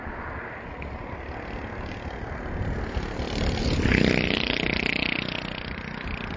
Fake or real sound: real